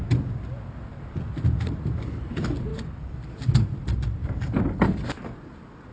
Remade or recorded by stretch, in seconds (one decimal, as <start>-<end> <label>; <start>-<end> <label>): 0.0-4.2 recorded; 4.2-5.1 remade; 5.1-5.9 recorded